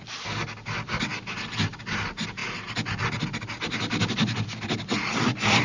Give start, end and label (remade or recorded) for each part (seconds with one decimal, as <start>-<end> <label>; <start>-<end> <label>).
0.0-5.6 recorded